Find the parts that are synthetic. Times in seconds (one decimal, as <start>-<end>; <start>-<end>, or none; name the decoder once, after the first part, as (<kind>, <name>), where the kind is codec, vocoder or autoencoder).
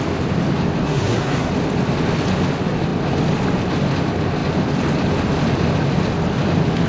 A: 0.8-1.5 (codec, SNAC)